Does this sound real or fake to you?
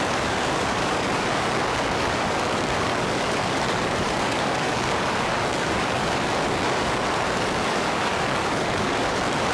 fake